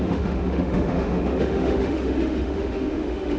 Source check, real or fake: fake